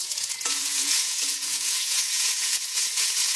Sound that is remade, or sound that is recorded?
remade